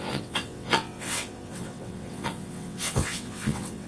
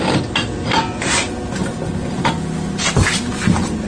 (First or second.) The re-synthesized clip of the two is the first